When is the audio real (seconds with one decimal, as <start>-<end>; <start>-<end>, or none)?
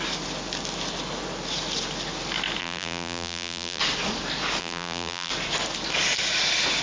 0.0-2.6; 3.8-4.6; 5.3-6.8